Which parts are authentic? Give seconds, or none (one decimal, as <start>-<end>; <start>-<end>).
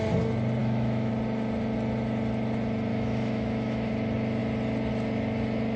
0.0-0.6; 1.1-2.9; 3.9-5.8